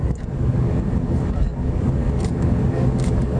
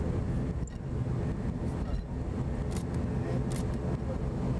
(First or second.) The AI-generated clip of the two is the first